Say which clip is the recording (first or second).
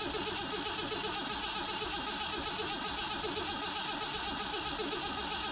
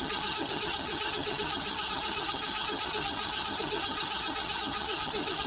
first